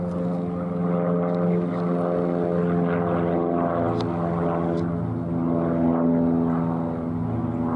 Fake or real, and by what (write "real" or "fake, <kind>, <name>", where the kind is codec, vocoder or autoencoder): real